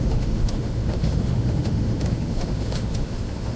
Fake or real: fake